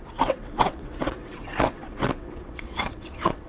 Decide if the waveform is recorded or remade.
remade